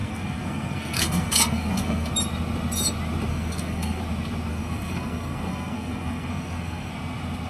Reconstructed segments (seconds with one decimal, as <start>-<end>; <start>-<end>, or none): 0.0-2.1; 3.3-4.0; 4.5-6.9